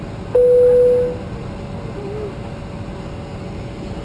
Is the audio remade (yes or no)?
no